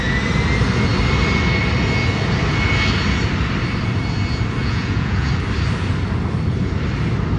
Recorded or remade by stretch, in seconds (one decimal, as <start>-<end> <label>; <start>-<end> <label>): 0.0-4.6 recorded; 4.6-5.3 remade; 5.3-7.4 recorded